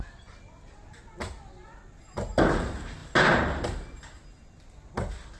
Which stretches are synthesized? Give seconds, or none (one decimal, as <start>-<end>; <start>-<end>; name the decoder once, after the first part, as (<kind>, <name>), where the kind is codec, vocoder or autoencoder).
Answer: none